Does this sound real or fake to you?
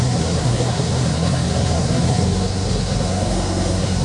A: fake